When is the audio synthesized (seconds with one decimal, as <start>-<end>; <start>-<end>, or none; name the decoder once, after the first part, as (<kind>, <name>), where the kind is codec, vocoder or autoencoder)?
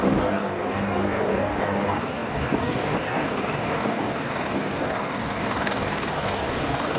0.0-7.0 (codec, DAC)